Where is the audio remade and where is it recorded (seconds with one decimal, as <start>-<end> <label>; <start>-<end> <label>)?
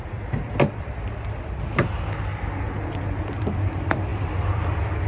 0.0-2.3 remade; 2.3-3.2 recorded; 3.2-5.1 remade